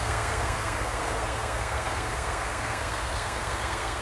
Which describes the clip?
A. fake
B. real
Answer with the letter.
A